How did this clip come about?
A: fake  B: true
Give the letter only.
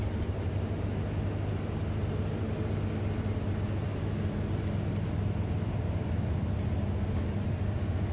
B